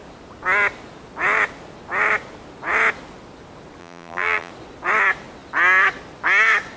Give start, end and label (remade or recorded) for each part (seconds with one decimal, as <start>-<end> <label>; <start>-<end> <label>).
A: 0.0-3.8 recorded; 3.8-4.5 remade; 4.5-6.8 recorded